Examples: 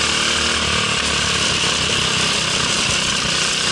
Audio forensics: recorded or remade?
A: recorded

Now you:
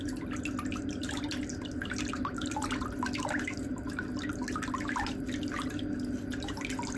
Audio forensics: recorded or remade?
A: recorded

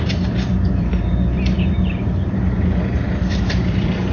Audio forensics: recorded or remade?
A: remade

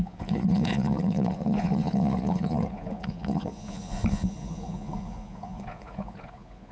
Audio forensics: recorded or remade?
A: remade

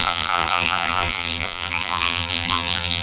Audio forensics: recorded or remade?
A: remade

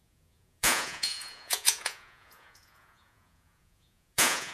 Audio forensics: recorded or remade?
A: remade